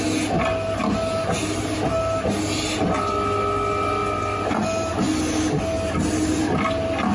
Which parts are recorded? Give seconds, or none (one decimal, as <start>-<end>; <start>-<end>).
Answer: 0.0-7.1